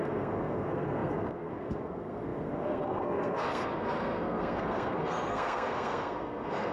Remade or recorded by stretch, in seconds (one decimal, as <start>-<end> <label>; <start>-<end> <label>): 0.0-6.7 remade